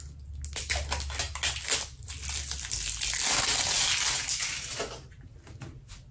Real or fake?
real